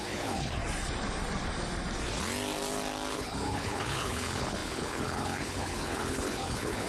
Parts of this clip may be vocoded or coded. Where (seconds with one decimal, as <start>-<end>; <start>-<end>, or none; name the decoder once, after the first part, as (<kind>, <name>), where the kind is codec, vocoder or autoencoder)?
0.0-0.6 (codec, HILCodec); 3.1-6.9